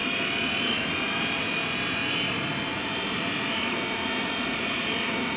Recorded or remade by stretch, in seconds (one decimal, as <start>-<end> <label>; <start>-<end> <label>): 0.0-0.7 recorded; 0.7-5.4 remade